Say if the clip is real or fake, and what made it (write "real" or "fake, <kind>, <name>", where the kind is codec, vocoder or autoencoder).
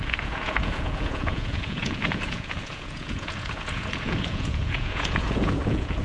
fake, vocoder, Vocos